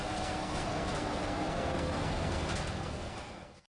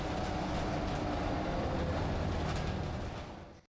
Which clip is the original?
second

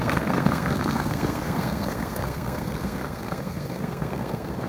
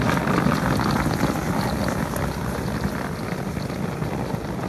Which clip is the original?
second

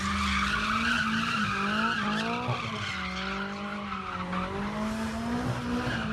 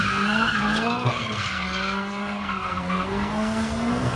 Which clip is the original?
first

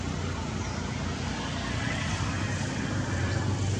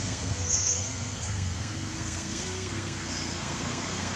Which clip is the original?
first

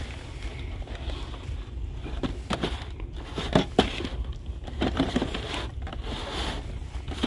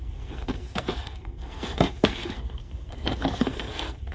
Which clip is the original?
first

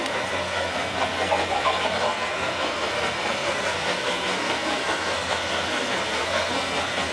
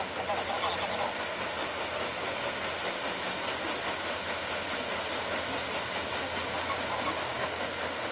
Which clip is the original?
second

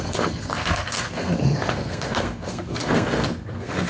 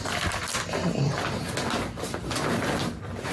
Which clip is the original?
second